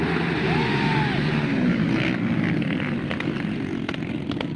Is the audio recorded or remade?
recorded